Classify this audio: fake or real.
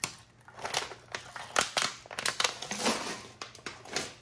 real